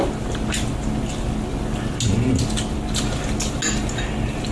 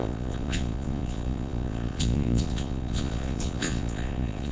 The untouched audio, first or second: first